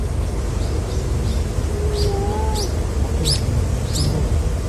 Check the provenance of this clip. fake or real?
real